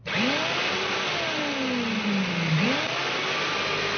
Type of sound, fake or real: real